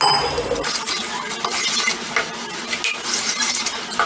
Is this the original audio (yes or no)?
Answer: yes